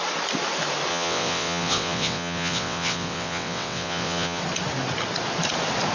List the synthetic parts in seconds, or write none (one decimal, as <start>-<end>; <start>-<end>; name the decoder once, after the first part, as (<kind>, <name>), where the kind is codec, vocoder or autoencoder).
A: 0.9-4.4 (vocoder, WaveNeXt)